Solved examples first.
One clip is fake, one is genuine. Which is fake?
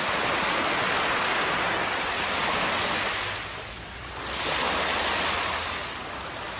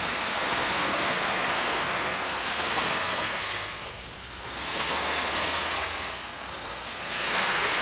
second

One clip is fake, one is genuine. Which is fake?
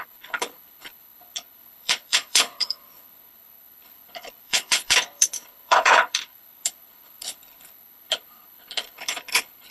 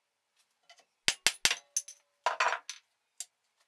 first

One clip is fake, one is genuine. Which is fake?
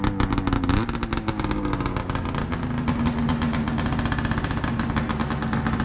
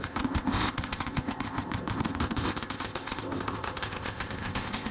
second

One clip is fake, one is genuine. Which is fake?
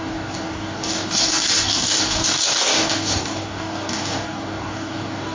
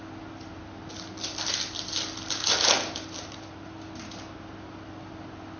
first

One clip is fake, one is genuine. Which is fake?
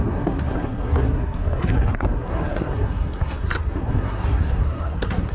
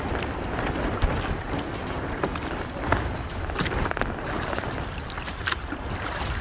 first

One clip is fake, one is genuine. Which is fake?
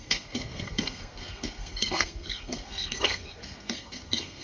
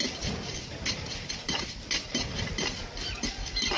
first